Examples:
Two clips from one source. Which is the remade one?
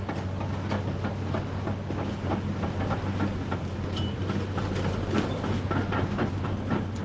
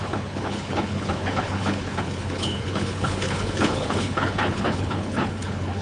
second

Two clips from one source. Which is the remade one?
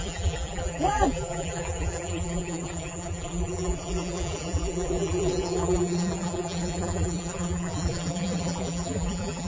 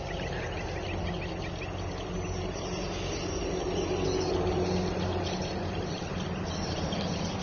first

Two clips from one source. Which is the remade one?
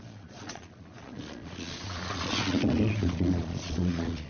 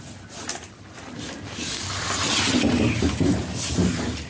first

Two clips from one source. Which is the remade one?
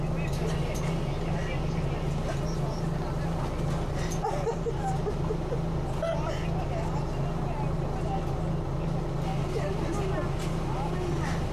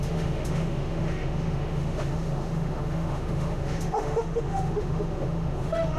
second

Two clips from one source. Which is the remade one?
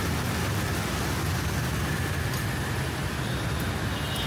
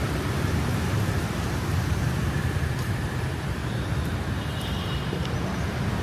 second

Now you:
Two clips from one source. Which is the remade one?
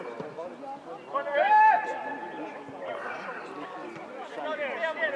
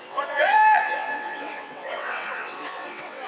second